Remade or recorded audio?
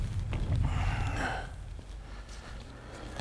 recorded